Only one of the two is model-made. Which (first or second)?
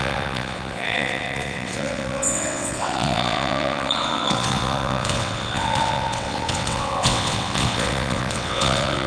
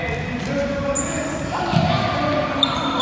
first